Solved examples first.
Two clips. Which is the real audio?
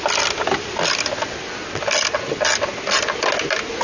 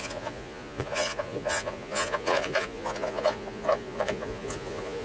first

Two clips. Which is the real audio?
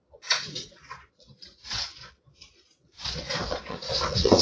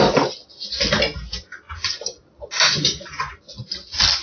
second